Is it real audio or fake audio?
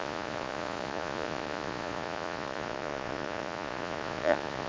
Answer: fake